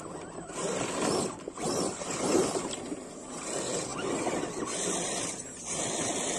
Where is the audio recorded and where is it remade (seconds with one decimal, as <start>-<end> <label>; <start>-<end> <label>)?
0.0-6.4 recorded